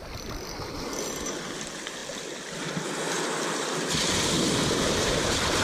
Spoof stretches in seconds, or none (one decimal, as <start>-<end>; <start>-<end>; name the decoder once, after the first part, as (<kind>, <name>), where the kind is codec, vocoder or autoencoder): none